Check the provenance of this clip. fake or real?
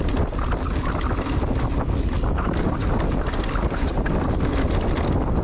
real